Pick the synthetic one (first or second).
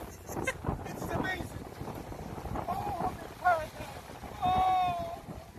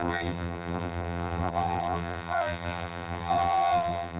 second